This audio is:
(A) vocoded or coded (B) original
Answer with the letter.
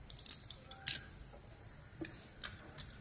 A